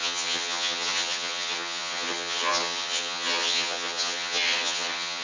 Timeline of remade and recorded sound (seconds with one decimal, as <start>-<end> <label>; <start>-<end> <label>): 0.0-5.2 remade